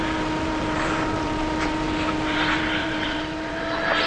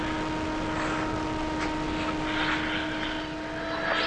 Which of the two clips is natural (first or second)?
second